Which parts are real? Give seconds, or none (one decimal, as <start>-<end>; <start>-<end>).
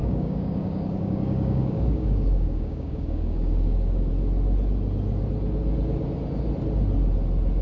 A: 4.1-7.6